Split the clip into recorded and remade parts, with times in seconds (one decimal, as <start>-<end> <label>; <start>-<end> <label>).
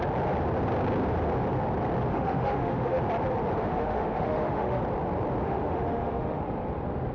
0.0-2.1 recorded; 2.1-3.0 remade; 3.0-3.6 recorded; 3.6-4.8 remade; 4.8-5.4 recorded; 5.4-6.4 remade; 6.4-7.1 recorded